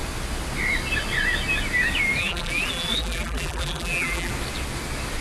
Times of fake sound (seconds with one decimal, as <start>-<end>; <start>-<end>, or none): 2.2-4.3